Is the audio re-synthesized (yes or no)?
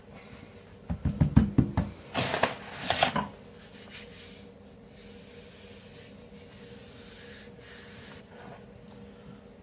no